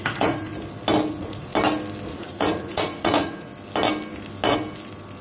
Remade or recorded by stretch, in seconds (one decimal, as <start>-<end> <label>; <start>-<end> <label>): 0.0-0.5 remade; 0.5-1.1 recorded; 1.1-1.5 remade; 1.5-2.1 recorded; 2.1-3.5 remade; 3.5-5.2 recorded